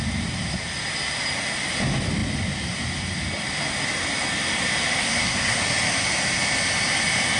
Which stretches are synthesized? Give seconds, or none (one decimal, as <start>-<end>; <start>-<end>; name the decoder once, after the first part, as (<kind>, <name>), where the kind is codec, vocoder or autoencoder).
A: 5.0-5.6 (codec, SNAC)